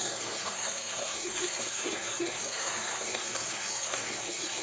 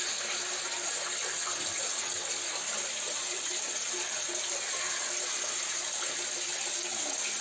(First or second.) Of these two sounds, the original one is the second